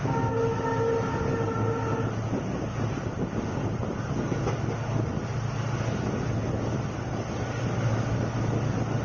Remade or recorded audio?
recorded